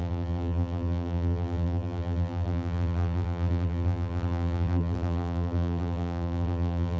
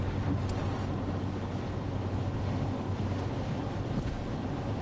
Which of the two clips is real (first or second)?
second